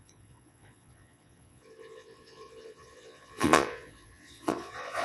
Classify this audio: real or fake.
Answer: fake